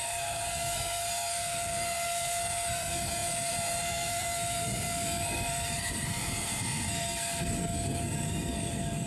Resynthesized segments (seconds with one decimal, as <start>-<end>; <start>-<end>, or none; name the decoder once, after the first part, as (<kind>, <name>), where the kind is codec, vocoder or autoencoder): 0.0-9.1 (codec, SNAC)